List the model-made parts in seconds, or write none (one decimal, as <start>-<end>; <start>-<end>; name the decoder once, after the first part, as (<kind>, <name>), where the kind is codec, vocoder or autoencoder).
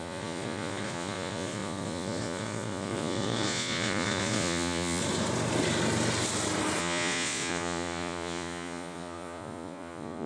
0.0-5.0 (vocoder, Vocos); 6.8-10.3